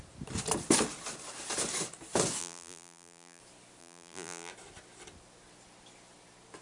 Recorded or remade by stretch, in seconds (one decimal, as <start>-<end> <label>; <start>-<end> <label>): 0.0-2.4 recorded; 2.4-3.4 remade; 3.4-3.8 recorded; 3.8-4.5 remade; 4.5-6.6 recorded